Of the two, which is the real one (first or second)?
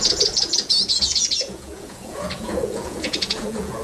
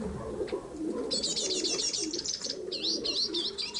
second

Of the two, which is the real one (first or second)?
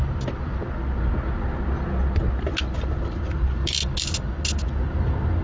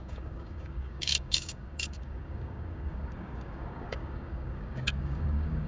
first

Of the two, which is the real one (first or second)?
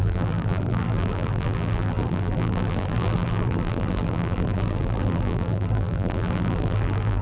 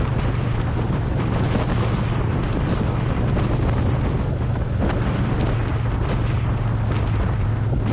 second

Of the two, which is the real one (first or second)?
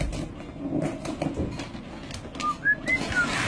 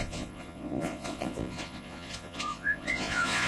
first